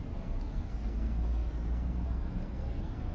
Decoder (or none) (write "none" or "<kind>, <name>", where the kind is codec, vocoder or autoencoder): codec, SNAC